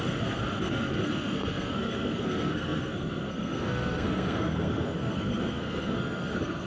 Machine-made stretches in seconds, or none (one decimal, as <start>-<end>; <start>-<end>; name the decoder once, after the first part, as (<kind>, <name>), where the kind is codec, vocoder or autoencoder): 0.0-6.7 (codec, SNAC)